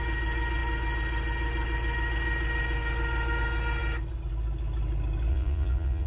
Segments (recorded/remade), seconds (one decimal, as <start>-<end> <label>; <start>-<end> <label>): 0.0-5.3 recorded; 5.3-6.1 remade